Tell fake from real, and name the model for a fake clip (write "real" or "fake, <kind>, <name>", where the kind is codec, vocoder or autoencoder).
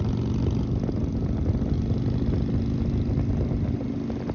real